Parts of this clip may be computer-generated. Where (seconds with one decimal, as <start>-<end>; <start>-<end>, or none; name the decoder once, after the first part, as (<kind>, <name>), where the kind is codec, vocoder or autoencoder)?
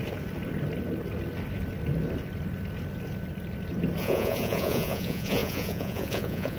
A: 4.0-6.6 (vocoder, Vocos)